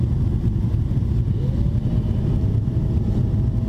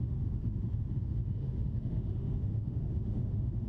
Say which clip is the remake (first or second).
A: second